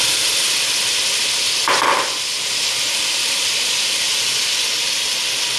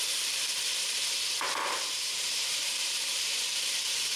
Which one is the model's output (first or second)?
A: second